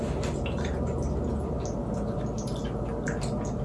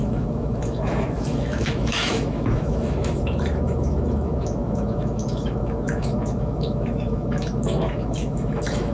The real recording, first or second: first